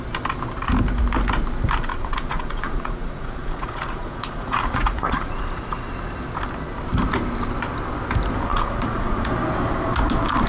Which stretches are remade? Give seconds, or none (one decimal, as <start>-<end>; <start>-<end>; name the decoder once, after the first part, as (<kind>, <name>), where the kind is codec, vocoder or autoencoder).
1.9-5.9 (vocoder, Vocos); 8.5-9.3